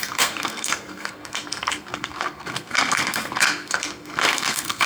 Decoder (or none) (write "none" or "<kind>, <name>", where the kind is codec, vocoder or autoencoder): codec, SNAC